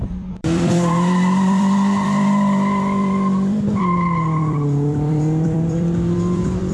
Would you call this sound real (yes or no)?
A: no